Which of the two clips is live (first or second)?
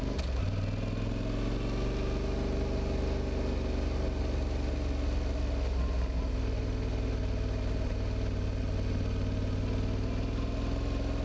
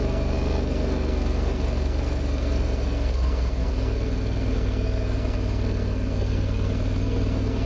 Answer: first